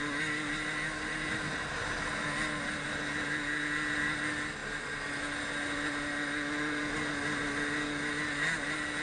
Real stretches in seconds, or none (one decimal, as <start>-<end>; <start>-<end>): 0.0-9.0